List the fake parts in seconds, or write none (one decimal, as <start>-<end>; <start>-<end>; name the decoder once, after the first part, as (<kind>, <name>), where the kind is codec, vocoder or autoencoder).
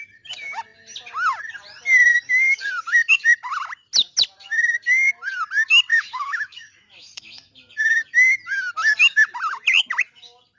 2.1-2.6 (autoencoder, DAC-VAE); 5.9-7.7